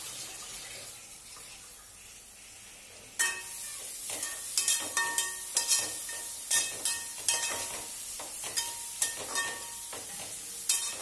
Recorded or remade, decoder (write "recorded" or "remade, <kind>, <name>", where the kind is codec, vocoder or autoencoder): recorded